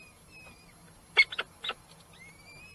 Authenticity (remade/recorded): recorded